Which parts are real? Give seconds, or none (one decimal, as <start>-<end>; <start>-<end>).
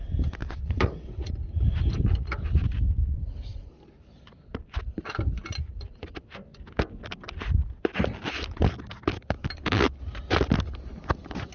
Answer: 0.0-0.4; 1.3-11.5